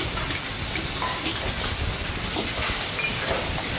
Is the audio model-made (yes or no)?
no